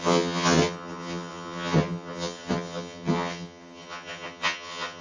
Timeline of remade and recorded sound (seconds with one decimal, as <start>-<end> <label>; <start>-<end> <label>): 0.0-5.0 remade